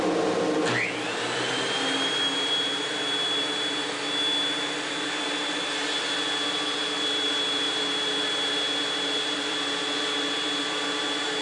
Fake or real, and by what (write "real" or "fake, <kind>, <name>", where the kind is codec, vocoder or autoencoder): real